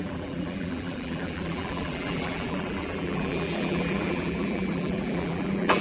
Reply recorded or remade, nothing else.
remade